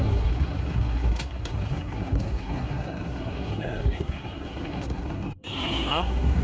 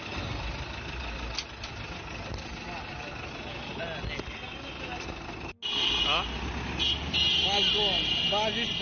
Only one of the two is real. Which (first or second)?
second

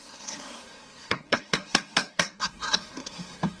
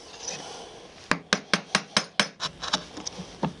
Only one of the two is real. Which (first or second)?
second